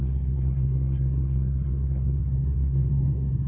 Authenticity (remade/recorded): remade